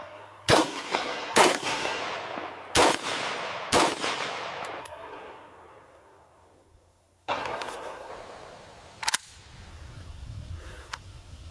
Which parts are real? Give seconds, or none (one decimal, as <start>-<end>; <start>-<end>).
2.0-4.8; 8.1-9.7